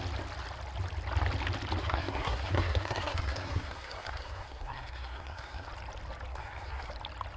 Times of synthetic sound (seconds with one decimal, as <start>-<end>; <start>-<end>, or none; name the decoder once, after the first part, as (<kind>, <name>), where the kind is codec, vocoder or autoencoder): 1.8-5.7 (codec, SNAC); 6.3-6.9